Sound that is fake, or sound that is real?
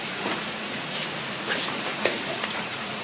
fake